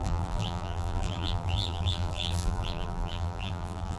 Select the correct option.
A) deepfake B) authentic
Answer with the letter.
A